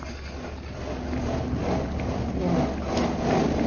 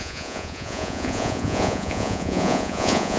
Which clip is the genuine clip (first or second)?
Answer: first